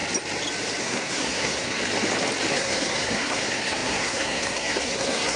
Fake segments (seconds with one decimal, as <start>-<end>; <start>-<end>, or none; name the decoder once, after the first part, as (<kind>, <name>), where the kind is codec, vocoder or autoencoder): 0.8-1.8 (codec, SNAC); 2.5-5.4

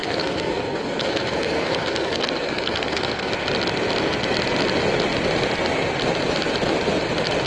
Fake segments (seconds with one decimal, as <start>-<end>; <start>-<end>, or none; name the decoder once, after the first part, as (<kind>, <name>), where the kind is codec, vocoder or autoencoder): 0.0-3.3 (codec, SNAC)

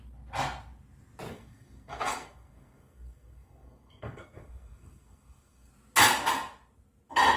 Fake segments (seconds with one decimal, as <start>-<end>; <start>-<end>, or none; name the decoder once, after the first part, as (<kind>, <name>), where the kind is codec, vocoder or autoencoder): 1.3-5.7 (codec, SNAC)

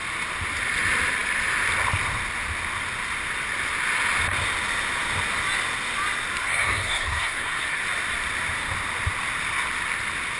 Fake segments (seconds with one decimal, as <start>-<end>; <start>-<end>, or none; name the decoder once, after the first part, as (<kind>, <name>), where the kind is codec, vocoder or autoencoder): 6.4-7.8 (codec, SNAC)

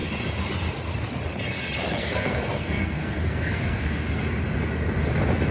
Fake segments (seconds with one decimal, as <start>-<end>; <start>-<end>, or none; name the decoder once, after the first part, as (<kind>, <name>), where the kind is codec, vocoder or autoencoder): 2.0-4.2 (codec, SNAC)

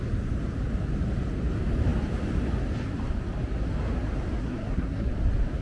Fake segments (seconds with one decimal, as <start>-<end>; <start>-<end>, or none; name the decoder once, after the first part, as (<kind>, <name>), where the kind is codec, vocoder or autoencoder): 4.4-5.1 (codec, SNAC)

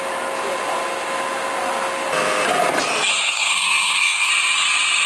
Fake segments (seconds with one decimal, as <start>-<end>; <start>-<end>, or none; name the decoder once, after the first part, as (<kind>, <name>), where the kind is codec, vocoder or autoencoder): 3.1-4.3 (codec, SNAC)